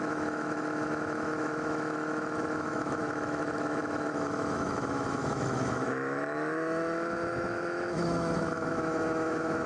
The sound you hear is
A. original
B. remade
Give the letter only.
B